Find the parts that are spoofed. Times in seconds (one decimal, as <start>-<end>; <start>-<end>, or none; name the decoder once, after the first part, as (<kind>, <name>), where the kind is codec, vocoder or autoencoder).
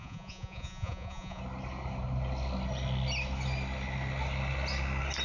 0.0-1.4 (vocoder, Vocos)